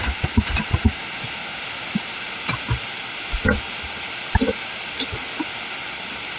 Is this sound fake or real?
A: real